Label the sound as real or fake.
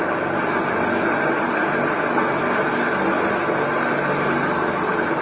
real